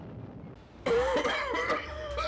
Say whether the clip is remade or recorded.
recorded